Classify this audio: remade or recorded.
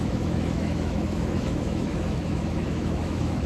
remade